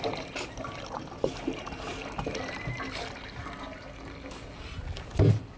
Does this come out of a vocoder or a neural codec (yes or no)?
no